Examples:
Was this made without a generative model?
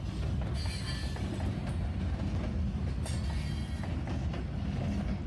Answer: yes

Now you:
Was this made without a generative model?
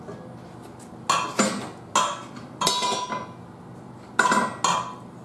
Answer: yes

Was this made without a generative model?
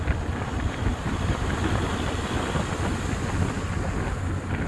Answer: yes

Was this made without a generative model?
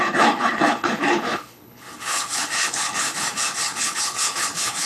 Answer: no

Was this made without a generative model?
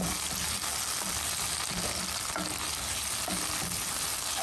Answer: yes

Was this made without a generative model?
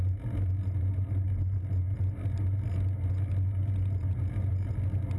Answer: yes